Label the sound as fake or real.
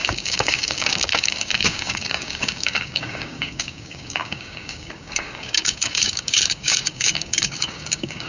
fake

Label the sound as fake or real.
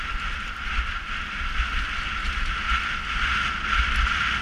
real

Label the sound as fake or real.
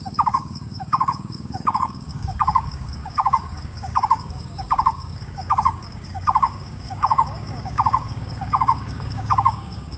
fake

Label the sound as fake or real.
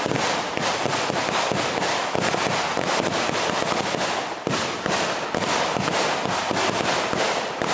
real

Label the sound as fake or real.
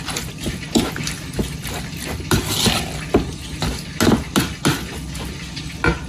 real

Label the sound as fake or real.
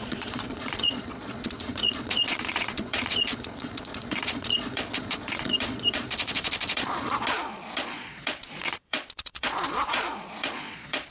fake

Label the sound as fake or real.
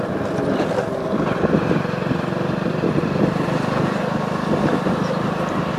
real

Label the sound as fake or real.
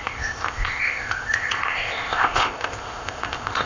fake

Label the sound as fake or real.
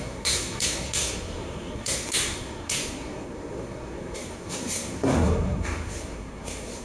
fake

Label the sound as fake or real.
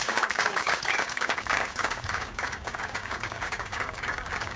fake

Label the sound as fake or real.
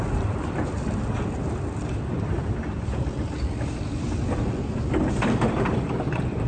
fake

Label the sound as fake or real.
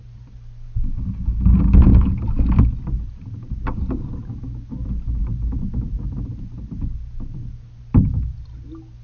real